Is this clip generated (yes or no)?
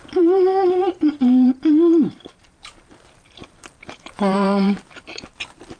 yes